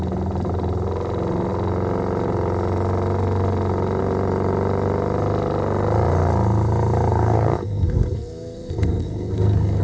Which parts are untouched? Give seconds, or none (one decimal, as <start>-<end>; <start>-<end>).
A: 0.0-7.1